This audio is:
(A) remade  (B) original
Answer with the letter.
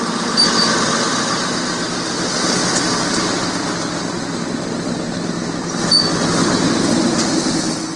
B